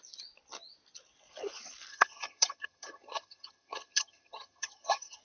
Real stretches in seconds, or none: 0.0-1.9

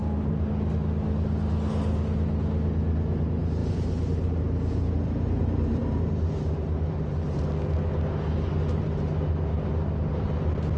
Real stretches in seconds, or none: 0.0-3.6; 7.4-10.8

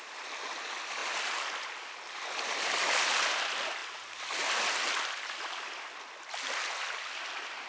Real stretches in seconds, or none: 0.0-7.7

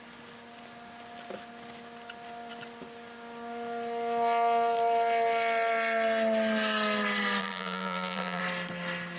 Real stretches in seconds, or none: 0.0-7.4; 8.4-9.2

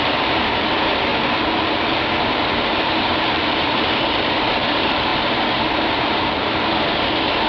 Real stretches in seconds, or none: 1.1-2.3

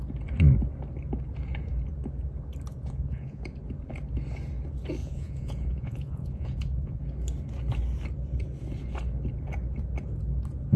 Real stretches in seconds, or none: 0.0-2.7; 3.4-5.0; 7.0-10.8

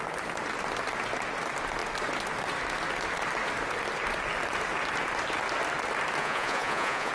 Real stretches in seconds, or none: 0.0-6.2